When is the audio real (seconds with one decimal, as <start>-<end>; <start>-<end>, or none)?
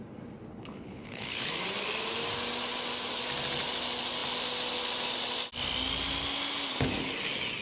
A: 0.0-0.5; 1.5-7.6